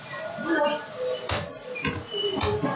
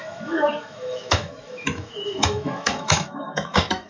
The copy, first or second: second